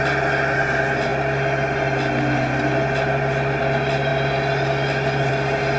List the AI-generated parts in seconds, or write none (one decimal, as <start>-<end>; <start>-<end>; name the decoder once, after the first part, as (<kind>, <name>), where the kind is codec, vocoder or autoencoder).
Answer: none